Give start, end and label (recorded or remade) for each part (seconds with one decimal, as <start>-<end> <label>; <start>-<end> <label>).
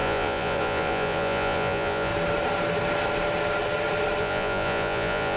0.0-2.1 remade; 2.1-4.2 recorded; 4.2-5.4 remade